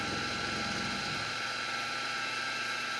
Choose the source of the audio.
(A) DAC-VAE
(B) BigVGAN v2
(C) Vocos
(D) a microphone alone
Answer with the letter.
D